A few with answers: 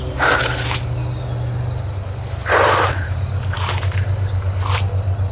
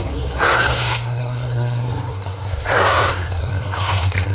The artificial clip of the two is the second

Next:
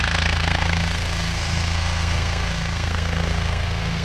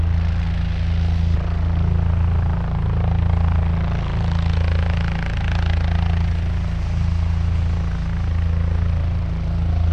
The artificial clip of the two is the first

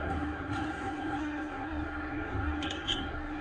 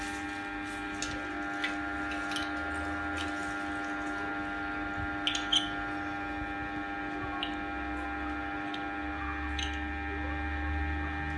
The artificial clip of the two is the first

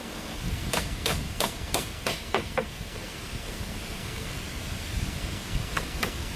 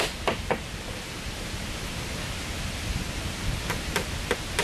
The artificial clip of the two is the first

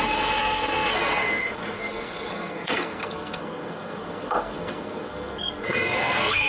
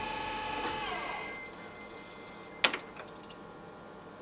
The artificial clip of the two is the first